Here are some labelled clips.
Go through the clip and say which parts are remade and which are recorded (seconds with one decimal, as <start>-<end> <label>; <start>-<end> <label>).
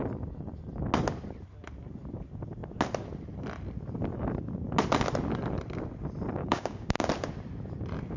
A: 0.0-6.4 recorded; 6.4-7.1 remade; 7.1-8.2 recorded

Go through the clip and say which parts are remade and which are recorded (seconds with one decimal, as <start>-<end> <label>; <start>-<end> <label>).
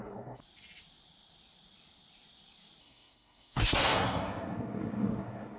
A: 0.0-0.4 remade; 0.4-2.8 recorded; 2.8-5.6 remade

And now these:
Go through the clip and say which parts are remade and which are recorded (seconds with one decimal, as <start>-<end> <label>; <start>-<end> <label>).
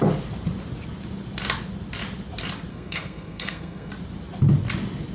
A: 0.0-2.7 recorded; 2.7-3.9 remade; 3.9-5.1 recorded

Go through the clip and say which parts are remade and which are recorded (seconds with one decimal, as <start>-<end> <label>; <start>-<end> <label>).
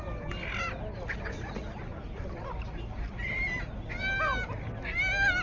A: 0.0-5.4 recorded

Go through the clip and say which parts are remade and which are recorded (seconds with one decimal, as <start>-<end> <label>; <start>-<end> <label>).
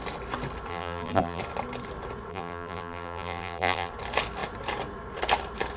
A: 0.0-0.7 recorded; 0.7-1.4 remade; 1.4-2.3 recorded; 2.3-3.9 remade; 3.9-5.8 recorded